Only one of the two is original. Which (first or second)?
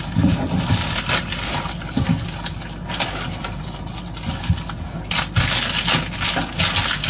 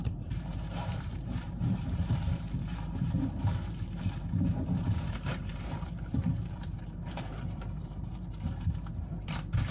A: first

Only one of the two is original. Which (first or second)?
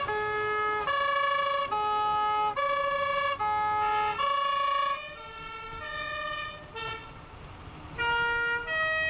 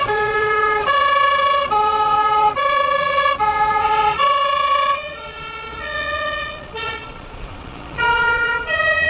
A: first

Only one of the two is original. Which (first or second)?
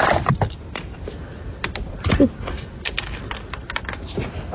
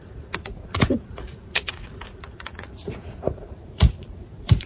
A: first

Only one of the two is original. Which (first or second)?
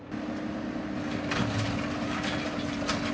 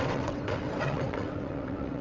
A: first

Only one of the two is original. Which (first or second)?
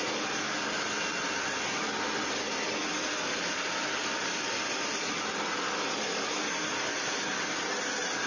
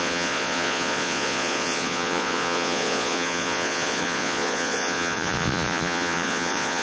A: first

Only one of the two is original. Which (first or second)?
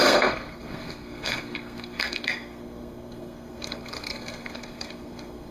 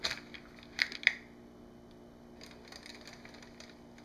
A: second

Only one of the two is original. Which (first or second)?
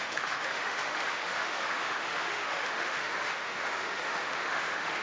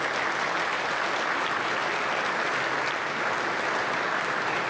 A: second